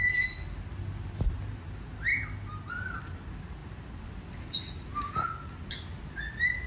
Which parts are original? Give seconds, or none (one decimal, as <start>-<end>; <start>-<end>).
0.0-6.7

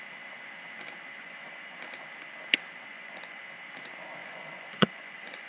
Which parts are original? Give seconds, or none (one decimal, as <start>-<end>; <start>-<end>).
0.0-1.2; 1.8-2.9; 3.4-4.2

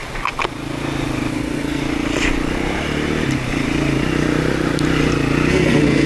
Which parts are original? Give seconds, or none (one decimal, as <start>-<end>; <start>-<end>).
0.0-1.3; 1.8-5.5

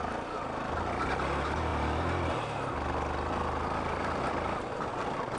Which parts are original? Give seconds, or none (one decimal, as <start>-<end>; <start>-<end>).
0.0-5.4

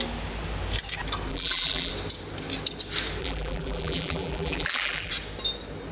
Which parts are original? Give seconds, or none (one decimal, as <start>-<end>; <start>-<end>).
0.0-1.3; 1.9-3.2; 5.1-5.9

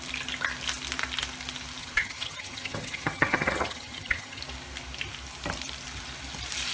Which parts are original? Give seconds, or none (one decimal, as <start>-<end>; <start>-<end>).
0.0-1.8; 4.4-6.7

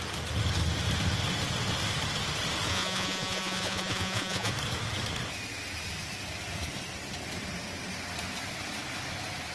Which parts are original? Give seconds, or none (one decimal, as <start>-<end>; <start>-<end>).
0.0-2.7; 4.5-9.5